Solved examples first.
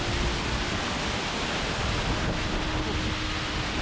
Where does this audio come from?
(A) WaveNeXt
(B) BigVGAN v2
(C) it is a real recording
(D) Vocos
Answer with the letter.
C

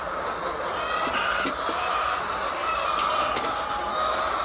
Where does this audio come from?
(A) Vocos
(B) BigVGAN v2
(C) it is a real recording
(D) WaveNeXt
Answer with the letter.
C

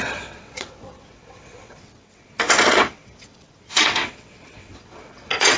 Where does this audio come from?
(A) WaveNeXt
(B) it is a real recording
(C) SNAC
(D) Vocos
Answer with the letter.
A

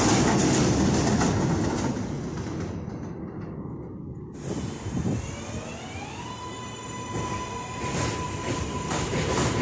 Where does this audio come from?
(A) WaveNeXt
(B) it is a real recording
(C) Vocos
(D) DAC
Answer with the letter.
B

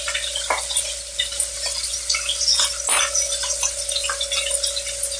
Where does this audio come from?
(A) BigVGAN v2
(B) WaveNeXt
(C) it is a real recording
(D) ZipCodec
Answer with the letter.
C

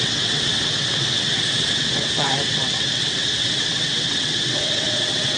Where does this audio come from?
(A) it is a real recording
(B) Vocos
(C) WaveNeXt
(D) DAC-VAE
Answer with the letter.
C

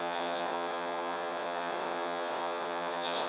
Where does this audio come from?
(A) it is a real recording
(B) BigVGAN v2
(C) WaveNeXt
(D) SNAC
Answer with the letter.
C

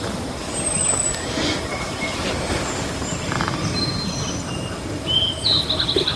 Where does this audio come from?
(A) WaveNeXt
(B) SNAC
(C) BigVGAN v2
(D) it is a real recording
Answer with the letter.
D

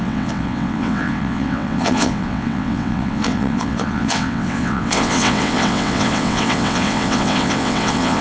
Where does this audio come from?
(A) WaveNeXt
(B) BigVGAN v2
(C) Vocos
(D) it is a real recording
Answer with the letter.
A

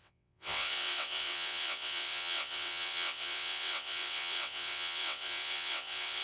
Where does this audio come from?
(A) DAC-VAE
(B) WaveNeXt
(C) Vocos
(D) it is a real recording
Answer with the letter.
B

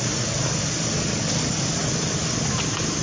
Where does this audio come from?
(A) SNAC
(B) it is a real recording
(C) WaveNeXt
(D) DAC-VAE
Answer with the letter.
B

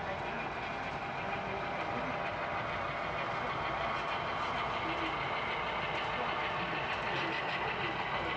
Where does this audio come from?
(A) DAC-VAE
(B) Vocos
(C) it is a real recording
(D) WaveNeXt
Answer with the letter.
C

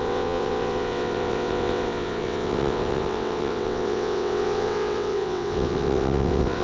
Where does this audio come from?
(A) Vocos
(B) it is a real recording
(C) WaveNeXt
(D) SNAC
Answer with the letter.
C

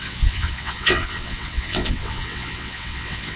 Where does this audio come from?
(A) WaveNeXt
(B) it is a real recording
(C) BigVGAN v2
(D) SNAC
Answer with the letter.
A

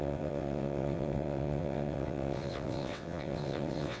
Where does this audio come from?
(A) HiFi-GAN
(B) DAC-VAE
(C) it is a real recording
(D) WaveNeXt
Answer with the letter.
D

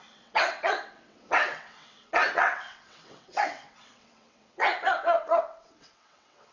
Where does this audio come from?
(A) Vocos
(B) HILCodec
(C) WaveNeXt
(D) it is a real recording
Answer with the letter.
C